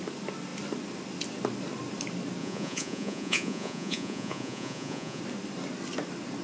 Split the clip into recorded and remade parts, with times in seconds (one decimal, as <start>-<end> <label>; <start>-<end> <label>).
0.0-2.4 recorded; 2.4-5.2 remade; 5.2-6.4 recorded